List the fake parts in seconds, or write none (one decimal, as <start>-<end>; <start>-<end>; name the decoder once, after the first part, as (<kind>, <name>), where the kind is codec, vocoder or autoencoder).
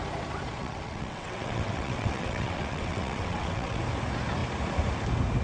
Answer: 0.6-3.8 (vocoder, WaveNeXt)